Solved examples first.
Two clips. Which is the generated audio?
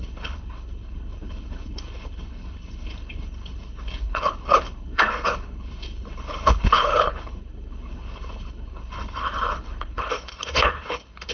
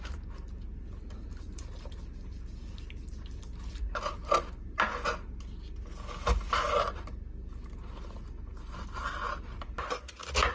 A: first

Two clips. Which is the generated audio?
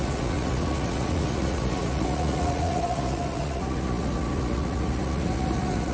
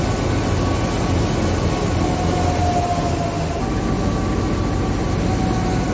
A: first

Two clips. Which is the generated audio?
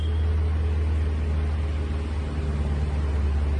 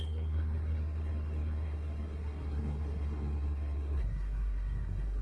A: second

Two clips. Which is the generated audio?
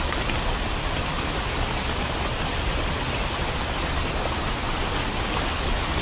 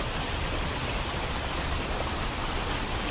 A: second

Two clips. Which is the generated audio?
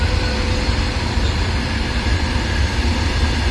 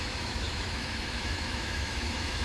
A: second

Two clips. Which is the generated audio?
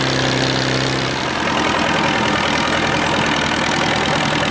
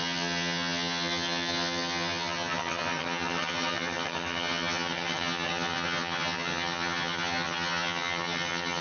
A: second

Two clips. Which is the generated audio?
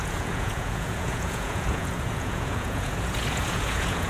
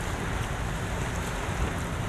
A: first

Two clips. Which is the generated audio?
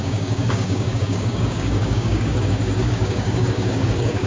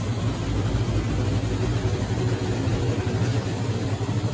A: first